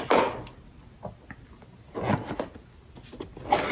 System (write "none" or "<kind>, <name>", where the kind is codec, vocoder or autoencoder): none